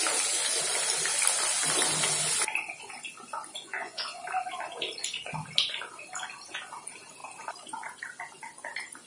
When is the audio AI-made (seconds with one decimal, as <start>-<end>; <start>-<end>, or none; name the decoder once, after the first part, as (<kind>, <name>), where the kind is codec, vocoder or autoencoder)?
3.6-4.2 (vocoder, Vocos)